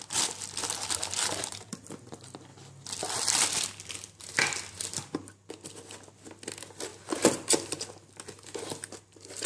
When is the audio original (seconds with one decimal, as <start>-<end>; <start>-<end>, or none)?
2.5-3.0; 6.9-8.6